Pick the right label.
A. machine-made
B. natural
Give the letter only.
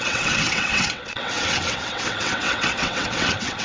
A